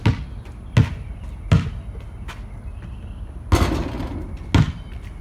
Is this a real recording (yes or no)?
yes